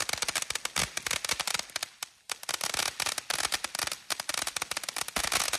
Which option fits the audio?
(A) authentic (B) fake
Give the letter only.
A